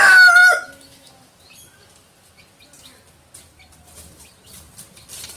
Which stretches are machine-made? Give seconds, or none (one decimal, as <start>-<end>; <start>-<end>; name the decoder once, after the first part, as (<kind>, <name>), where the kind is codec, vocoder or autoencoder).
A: 0.4-1.1 (autoencoder, DAC-VAE)